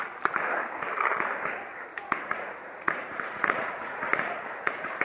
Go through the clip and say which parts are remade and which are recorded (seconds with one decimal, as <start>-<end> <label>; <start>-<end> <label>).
0.0-1.9 recorded; 1.9-5.0 remade